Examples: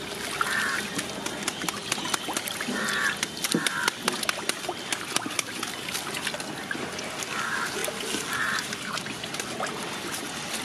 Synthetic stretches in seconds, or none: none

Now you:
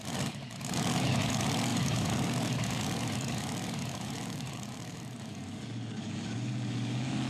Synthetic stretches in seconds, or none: 0.0-7.3 (codec, DAC)